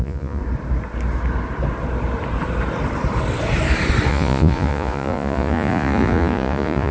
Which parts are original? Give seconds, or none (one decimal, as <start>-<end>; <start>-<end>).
0.4-4.1